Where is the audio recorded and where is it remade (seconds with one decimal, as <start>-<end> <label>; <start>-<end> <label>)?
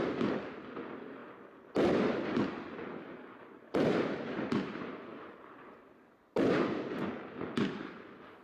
0.0-8.4 recorded